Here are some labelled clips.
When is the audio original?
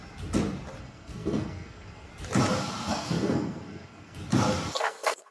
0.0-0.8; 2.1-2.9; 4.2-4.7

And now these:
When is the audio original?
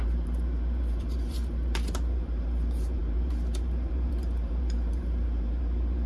none